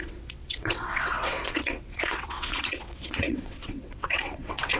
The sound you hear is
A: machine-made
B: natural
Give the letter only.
A